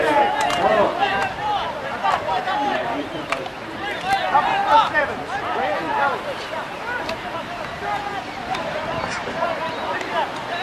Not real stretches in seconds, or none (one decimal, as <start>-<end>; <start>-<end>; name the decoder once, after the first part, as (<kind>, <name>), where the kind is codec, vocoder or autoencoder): 0.7-3.7 (vocoder, BigVGAN v2); 4.6-8.9

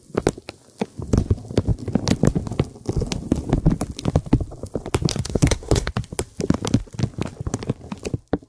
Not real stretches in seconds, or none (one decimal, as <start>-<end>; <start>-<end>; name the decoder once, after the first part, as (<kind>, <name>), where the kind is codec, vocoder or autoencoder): 5.1-5.9 (codec, SNAC)